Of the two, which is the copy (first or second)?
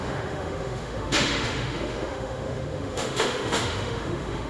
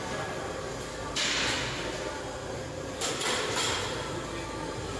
first